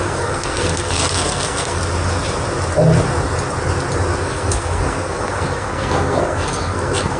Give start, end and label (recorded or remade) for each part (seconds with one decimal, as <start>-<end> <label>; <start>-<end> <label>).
0.0-1.8 remade; 1.8-4.2 recorded; 4.2-7.2 remade